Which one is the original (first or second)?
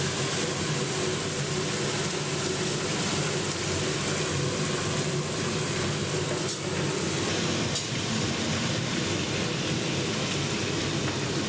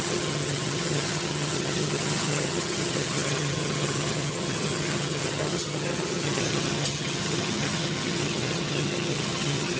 first